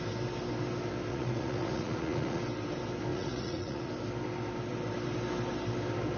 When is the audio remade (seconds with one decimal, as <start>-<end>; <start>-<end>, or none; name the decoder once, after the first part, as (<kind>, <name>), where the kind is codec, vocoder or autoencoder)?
1.1-2.4 (vocoder, Vocos); 3.1-3.9